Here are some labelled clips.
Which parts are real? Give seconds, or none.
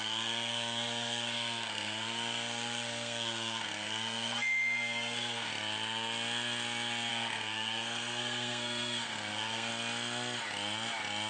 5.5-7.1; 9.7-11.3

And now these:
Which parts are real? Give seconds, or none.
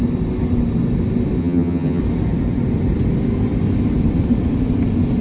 0.0-1.4; 2.0-5.2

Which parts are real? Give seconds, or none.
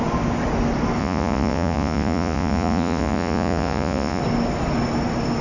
0.0-1.0; 4.2-5.4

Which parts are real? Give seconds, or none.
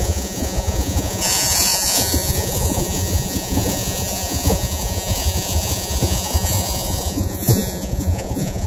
none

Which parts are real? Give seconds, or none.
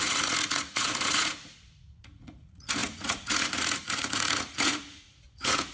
none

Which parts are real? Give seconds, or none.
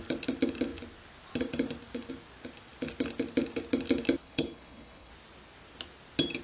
0.0-4.2; 5.1-6.4